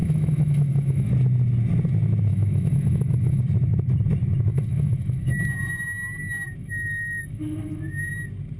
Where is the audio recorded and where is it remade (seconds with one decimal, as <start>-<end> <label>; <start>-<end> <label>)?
0.0-1.1 remade; 1.1-2.3 recorded; 2.3-3.4 remade; 3.4-4.5 recorded; 4.5-5.4 remade; 5.4-6.6 recorded; 6.6-7.8 remade; 7.8-8.6 recorded